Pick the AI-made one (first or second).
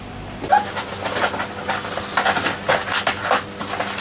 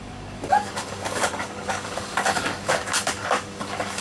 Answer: second